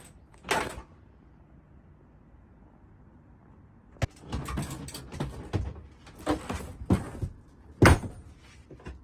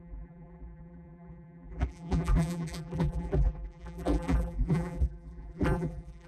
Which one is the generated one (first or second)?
second